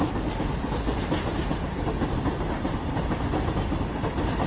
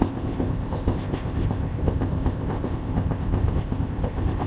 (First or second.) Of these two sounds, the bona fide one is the first